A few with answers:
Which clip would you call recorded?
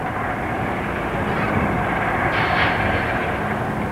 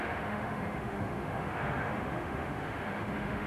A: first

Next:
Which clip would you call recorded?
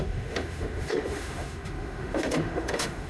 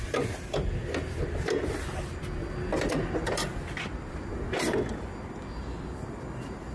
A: second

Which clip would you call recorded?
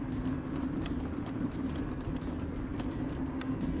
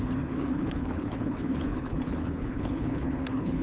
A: first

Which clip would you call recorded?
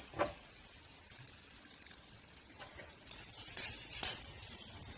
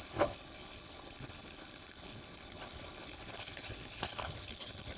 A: first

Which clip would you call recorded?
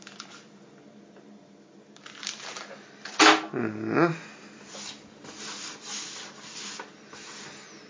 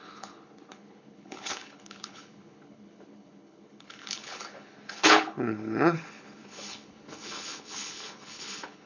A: first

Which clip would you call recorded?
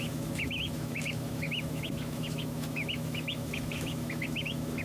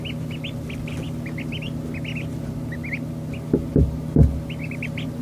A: second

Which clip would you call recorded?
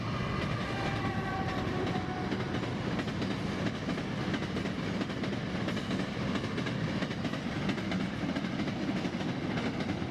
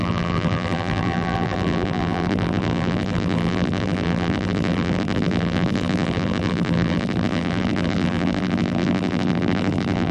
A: first